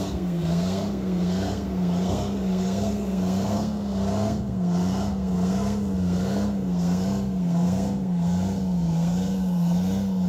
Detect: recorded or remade remade